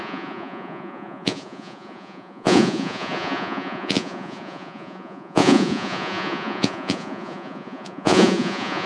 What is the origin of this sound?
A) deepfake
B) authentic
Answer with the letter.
A